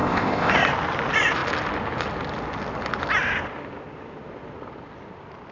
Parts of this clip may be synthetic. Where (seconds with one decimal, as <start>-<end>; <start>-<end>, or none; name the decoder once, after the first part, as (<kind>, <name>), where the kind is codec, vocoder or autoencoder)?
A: 0.0-0.5 (codec, ZipCodec)